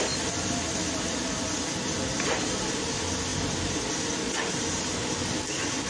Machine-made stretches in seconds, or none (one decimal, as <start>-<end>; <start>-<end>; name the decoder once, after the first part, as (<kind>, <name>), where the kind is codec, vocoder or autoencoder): none